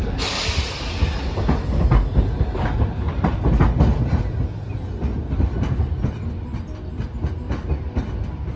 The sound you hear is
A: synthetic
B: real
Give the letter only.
B